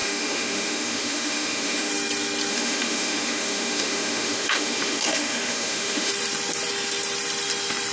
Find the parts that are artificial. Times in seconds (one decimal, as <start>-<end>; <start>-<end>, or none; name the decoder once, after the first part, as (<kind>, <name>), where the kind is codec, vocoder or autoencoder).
0.0-1.9 (autoencoder, DAC-VAE); 2.5-6.1